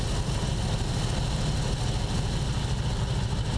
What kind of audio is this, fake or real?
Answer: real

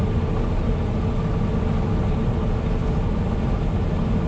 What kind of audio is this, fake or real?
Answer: real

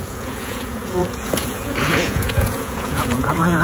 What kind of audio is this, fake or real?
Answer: fake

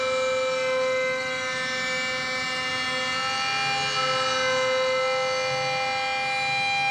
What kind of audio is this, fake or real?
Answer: real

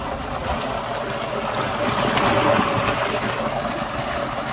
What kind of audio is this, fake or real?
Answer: real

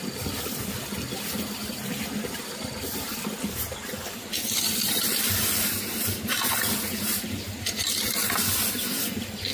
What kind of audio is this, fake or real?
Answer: real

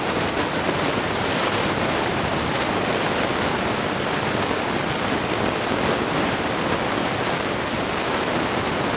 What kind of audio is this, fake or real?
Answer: real